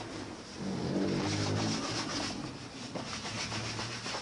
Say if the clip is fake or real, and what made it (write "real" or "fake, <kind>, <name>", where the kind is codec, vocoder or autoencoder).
real